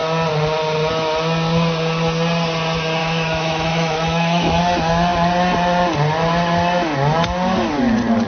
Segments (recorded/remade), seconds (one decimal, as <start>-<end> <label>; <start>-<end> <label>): 0.0-3.0 recorded; 3.0-4.6 remade; 4.6-8.3 recorded